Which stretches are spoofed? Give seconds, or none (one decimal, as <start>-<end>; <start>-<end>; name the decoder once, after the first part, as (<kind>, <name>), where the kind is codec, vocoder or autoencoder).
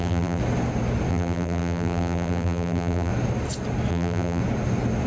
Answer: 0.0-0.4 (vocoder, BigVGAN v2); 1.1-3.1; 3.9-4.4